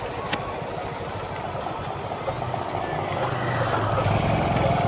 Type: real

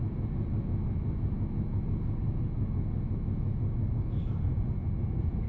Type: real